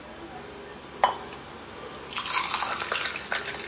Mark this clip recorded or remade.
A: recorded